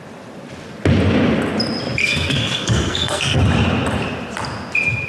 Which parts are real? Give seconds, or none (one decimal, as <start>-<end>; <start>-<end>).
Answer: 0.0-2.0; 3.4-5.1